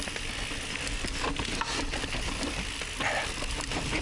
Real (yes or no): yes